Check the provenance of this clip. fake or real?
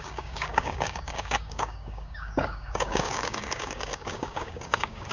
fake